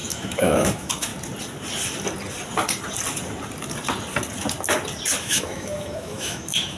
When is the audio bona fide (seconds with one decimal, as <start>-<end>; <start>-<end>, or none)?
1.1-5.2